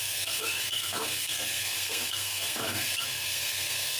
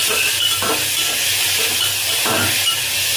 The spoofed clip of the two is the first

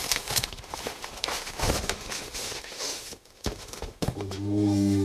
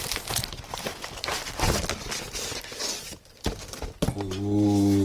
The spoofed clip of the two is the first